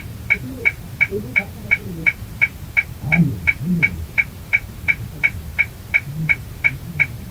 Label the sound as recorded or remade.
remade